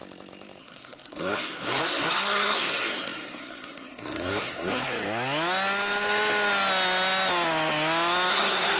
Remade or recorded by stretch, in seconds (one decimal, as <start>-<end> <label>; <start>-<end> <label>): 0.0-0.6 recorded; 0.6-4.9 remade; 4.9-8.3 recorded; 8.3-8.8 remade